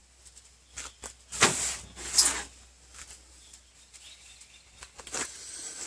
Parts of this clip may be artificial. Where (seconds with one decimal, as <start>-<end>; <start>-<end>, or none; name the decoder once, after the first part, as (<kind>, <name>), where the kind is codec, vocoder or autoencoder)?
none